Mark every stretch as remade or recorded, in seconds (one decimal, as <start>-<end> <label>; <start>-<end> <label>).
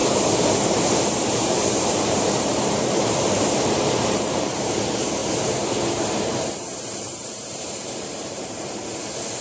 0.0-4.8 remade; 4.8-5.2 recorded; 5.2-8.6 remade; 8.6-9.4 recorded